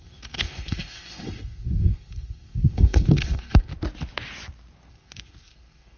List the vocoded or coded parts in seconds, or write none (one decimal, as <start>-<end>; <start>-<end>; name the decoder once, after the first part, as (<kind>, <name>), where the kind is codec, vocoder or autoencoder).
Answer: 0.0-3.7 (codec, SNAC); 4.9-6.0